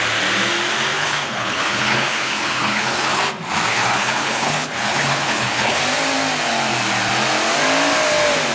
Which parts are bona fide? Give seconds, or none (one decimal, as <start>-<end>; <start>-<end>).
0.0-0.9; 3.2-3.7; 5.8-8.5

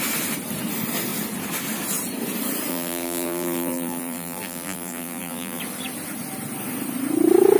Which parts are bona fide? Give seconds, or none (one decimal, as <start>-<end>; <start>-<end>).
0.0-2.7; 5.6-7.6

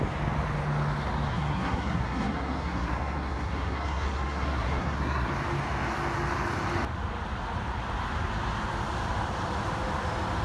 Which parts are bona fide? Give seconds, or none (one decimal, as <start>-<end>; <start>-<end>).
0.0-1.3; 5.3-10.4

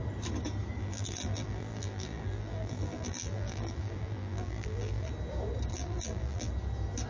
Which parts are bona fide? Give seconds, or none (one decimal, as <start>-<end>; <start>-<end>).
0.0-0.8; 5.1-5.7; 6.5-7.1

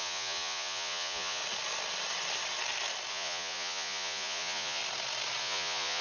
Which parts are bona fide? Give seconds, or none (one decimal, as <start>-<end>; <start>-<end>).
1.4-3.1; 4.8-5.4